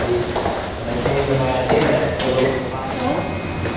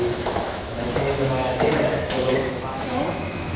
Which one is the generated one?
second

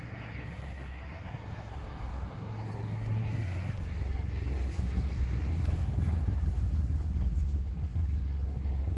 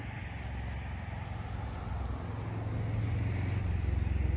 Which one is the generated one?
first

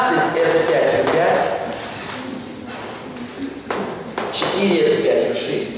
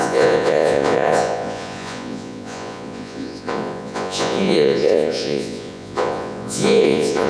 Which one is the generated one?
second